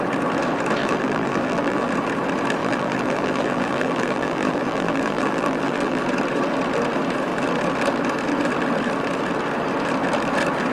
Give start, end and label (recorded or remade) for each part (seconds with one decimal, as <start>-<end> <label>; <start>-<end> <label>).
0.0-0.8 recorded; 0.8-1.9 remade; 1.9-2.6 recorded; 2.6-6.0 remade; 6.0-10.7 recorded